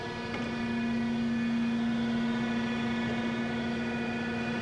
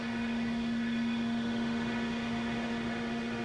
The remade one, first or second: second